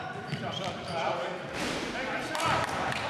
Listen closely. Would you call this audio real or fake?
fake